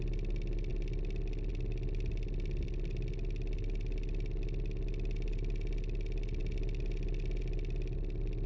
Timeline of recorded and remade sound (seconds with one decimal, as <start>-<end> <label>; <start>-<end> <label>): 0.0-8.5 recorded